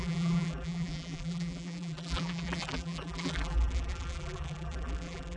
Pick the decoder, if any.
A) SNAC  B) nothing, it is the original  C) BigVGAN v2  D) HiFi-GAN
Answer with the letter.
C